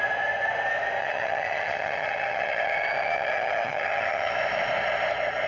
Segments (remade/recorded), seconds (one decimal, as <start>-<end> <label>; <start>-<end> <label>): 0.0-1.0 recorded; 1.0-4.3 remade; 4.3-5.5 recorded